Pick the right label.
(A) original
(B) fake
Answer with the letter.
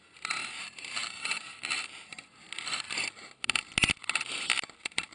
A